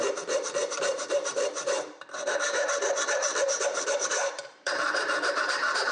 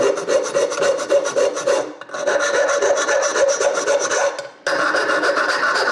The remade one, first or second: first